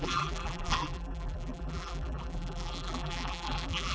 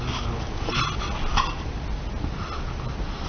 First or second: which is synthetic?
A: first